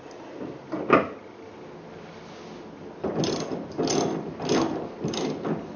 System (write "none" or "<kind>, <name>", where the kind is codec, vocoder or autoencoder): none